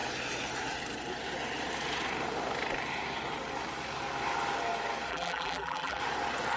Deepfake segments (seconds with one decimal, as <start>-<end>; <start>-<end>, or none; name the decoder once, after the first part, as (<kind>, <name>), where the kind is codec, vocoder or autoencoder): 5.1-6.0 (vocoder, BigVGAN v2)